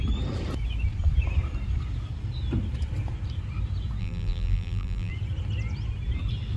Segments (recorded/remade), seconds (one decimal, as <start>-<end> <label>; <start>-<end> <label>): 0.0-4.0 recorded; 4.0-5.1 remade; 5.1-6.6 recorded